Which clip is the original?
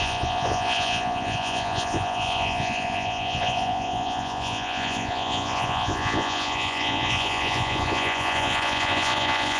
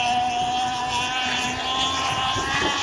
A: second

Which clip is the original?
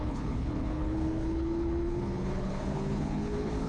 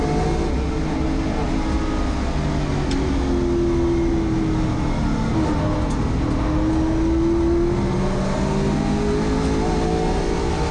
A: second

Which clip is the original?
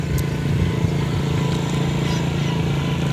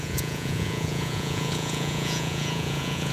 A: first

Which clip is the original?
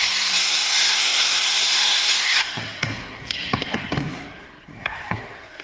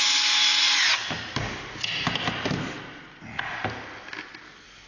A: second